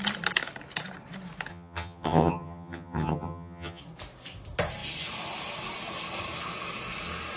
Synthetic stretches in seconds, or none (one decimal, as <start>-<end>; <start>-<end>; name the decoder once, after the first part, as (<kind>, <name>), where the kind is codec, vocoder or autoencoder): 1.5-3.8 (vocoder, HiFi-GAN)